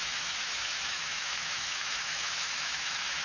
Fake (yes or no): yes